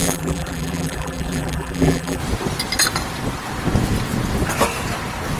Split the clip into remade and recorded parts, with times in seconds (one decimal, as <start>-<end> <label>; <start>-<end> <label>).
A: 0.0-2.2 remade; 2.2-5.4 recorded